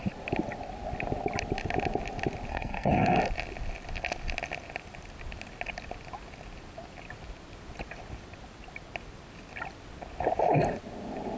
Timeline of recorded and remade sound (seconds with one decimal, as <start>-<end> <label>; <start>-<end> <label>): 0.0-2.5 recorded; 2.5-3.2 remade; 3.2-11.4 recorded